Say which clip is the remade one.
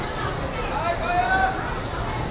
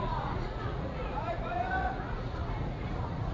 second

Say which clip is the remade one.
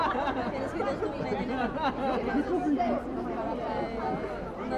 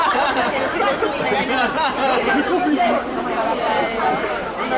second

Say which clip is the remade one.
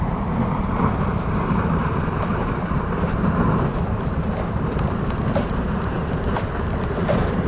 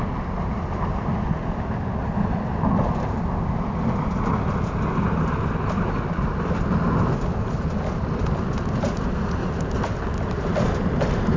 first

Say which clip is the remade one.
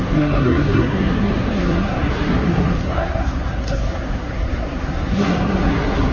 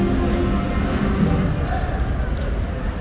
first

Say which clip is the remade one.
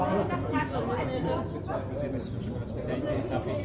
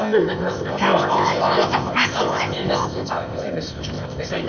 second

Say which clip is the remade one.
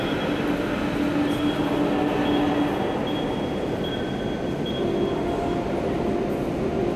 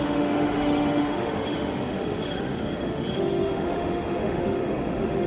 second